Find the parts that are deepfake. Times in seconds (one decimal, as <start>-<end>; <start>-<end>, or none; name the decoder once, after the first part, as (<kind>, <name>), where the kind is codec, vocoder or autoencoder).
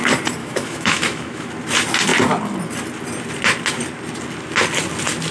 0.4-1.5 (autoencoder, DAC-VAE)